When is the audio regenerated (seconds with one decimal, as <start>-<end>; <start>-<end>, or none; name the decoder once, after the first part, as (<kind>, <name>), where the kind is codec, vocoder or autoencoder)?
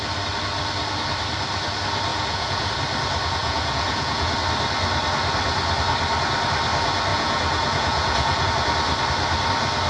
2.1-2.7 (vocoder, Vocos); 3.4-4.3; 7.1-8.5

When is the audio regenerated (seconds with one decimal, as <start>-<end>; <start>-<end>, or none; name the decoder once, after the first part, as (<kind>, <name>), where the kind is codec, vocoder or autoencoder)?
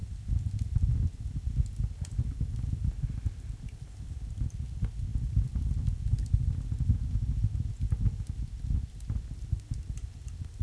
none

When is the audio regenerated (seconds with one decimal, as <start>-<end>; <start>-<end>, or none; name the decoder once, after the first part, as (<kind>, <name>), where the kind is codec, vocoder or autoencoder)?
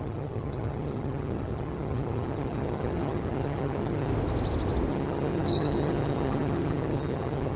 0.0-4.1 (vocoder, HiFi-GAN); 4.9-7.6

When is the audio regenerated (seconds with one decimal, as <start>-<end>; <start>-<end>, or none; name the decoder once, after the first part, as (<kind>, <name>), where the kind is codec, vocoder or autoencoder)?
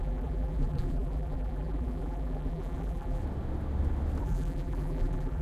0.0-3.2 (vocoder, BigVGAN v2); 4.2-5.4